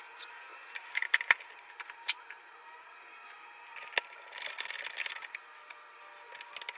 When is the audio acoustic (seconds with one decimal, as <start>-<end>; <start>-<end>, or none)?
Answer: 0.0-0.5; 2.5-6.8